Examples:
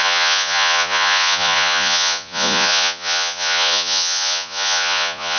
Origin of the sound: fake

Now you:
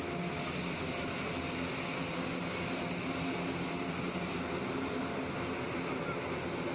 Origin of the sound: real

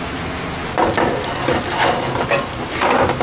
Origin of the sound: real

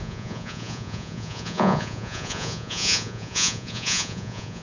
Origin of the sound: fake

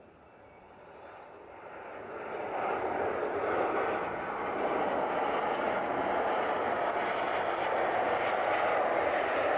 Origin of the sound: real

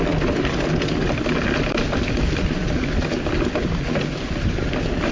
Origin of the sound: real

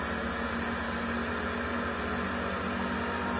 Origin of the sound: real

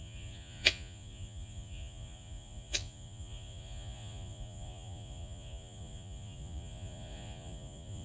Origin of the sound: fake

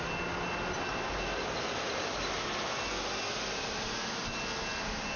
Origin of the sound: real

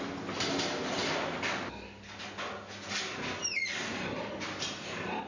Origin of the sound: real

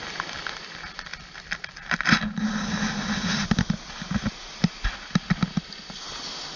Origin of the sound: real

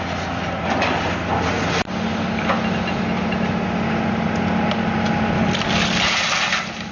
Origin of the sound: real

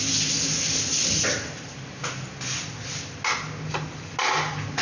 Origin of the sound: real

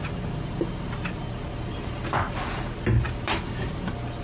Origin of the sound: real